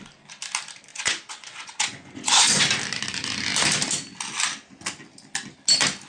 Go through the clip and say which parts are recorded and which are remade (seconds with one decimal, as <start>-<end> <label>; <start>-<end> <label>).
0.0-0.9 recorded; 0.9-2.6 remade; 2.6-6.1 recorded